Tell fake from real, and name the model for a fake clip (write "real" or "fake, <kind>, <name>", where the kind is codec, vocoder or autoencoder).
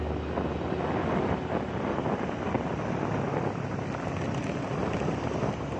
real